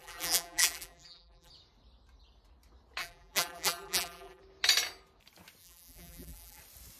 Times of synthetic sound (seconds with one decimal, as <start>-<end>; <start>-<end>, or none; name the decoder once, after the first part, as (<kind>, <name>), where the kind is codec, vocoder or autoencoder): 0.0-1.5 (vocoder, BigVGAN v2); 3.0-4.4; 5.6-6.6